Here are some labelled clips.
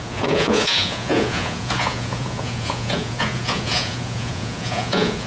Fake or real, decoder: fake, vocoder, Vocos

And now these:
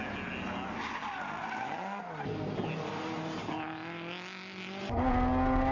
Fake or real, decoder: real